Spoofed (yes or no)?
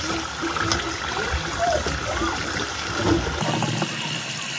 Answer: no